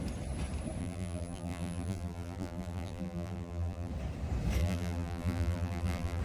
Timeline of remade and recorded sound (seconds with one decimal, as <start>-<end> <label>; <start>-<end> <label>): 0.0-0.8 recorded; 0.8-3.9 remade; 3.9-4.6 recorded; 4.6-6.2 remade